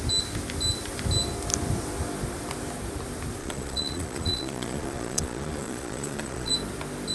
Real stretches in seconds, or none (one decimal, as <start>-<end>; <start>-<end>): 0.0-3.4; 6.5-7.1